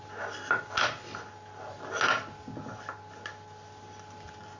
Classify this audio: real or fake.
real